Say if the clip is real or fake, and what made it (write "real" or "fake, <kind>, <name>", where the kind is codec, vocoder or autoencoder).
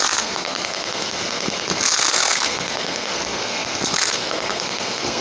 fake, codec, SNAC